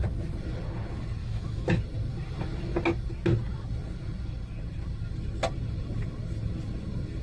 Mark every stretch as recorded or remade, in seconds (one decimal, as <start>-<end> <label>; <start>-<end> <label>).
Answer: 0.0-1.2 recorded; 1.2-1.8 remade; 1.8-7.2 recorded